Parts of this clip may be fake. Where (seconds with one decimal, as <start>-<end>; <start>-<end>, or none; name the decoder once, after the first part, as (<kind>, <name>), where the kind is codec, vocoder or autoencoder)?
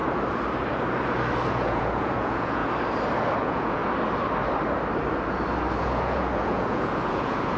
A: 1.5-2.6 (vocoder, Vocos); 3.4-3.8; 5.8-7.6